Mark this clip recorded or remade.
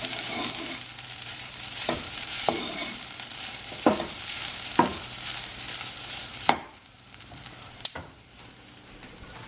remade